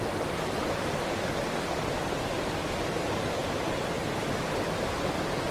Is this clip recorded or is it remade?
recorded